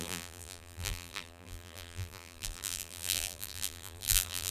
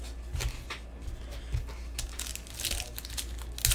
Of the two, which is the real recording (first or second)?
second